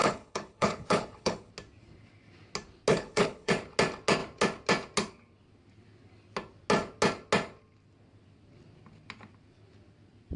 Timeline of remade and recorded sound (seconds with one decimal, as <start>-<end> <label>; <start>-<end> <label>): 0.0-1.5 remade; 1.5-2.9 recorded; 2.9-3.5 remade; 3.5-10.4 recorded